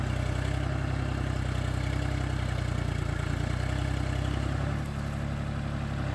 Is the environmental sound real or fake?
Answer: real